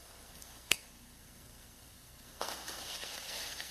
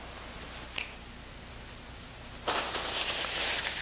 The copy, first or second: first